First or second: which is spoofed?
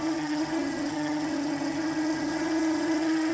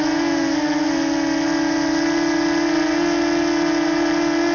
first